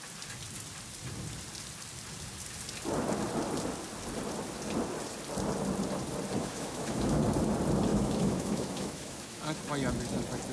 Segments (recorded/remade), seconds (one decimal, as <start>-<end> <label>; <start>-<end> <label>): 0.0-6.4 recorded; 6.4-7.2 remade; 7.2-7.9 recorded; 7.9-9.5 remade; 9.5-10.5 recorded